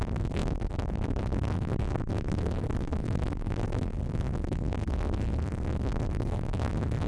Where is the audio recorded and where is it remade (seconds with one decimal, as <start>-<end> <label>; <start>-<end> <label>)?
0.0-7.1 remade